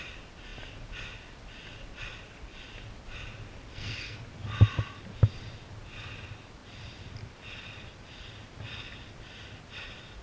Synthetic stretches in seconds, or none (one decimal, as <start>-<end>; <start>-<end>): 3.7-4.2